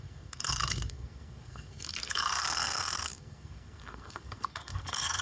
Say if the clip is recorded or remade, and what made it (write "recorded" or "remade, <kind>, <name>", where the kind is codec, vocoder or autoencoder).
remade, codec, SNAC